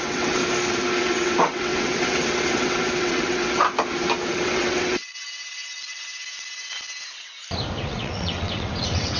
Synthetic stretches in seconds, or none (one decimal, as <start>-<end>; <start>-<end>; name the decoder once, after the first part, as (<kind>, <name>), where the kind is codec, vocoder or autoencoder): 0.0-0.4 (vocoder, WaveNeXt); 1.0-3.6; 4.3-5.0; 7.8-9.2